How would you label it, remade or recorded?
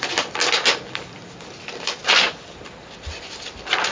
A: recorded